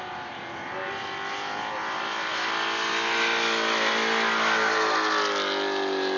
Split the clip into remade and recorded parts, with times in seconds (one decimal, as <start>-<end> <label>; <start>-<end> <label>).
0.0-6.2 recorded